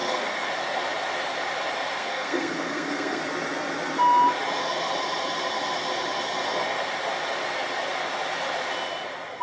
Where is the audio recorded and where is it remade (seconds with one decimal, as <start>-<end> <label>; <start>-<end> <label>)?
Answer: 0.0-0.5 remade; 0.5-2.0 recorded; 2.0-3.2 remade; 3.2-9.4 recorded